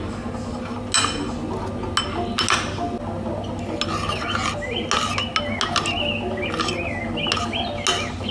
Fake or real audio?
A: real